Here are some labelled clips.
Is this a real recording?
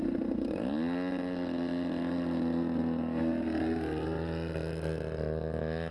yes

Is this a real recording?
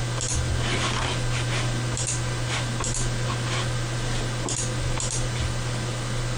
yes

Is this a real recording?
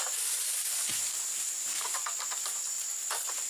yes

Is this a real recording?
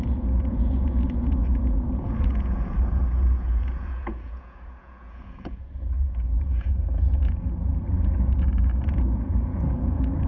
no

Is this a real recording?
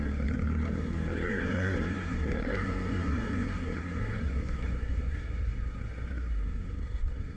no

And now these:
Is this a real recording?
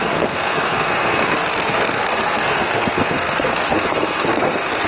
no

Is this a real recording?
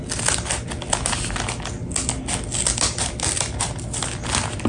yes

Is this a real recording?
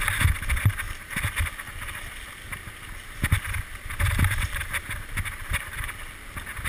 yes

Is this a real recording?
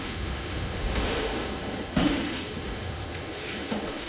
no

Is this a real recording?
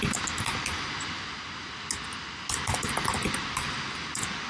yes